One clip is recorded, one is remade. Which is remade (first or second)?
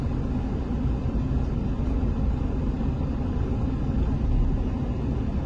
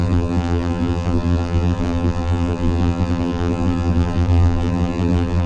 second